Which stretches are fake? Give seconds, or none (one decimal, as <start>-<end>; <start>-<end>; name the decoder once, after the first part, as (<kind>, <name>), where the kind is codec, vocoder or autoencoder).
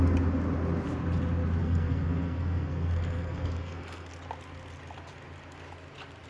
1.6-4.1 (codec, SNAC)